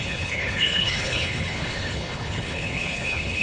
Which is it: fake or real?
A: fake